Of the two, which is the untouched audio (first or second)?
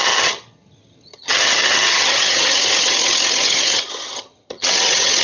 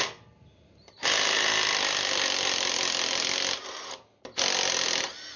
second